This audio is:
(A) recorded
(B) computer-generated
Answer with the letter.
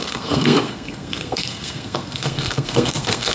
B